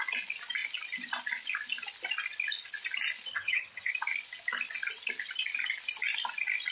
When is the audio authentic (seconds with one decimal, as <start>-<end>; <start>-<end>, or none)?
0.0-3.3; 3.9-6.7